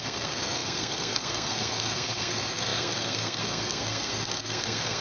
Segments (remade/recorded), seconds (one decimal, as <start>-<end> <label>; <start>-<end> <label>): 0.0-5.0 remade